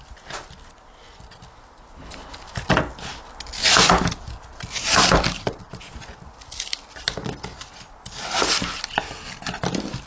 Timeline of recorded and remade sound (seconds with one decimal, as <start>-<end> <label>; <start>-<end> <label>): 0.0-4.8 recorded; 4.8-5.6 remade; 5.6-10.1 recorded

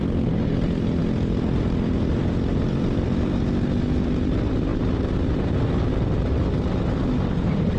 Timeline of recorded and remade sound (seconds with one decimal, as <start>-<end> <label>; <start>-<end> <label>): 0.0-7.8 recorded

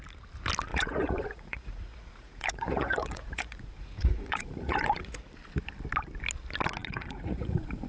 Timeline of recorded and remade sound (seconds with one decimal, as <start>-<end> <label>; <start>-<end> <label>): 0.0-0.7 recorded; 0.7-5.2 remade; 5.2-6.8 recorded; 6.8-7.9 remade

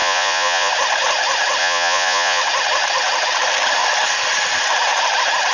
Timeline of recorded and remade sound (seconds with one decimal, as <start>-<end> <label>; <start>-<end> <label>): 0.0-0.7 remade; 0.7-1.6 recorded; 1.6-2.4 remade; 2.4-5.5 recorded

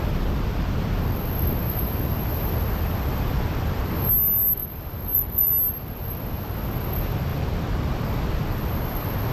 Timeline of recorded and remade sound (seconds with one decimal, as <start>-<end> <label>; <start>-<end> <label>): 0.0-2.3 recorded; 2.3-4.1 remade; 4.1-4.6 recorded; 4.6-5.5 remade; 5.5-7.3 recorded; 7.3-8.2 remade; 8.2-9.3 recorded

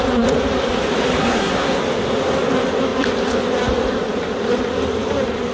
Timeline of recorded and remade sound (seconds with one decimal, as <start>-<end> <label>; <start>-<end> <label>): 0.0-1.2 recorded; 1.2-1.8 remade; 1.8-5.5 recorded